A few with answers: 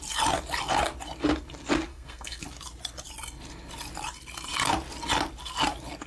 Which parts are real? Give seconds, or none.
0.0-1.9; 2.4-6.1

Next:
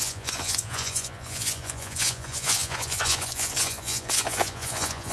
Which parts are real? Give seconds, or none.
none